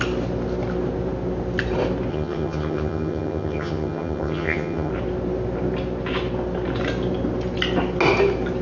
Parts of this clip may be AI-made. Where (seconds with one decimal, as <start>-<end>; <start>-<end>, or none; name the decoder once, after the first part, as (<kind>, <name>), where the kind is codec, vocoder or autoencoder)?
2.1-4.9 (vocoder, HiFi-GAN)